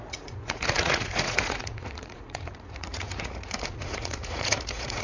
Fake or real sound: fake